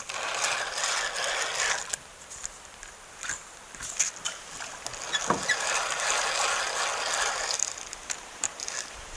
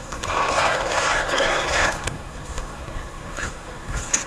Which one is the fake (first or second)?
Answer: second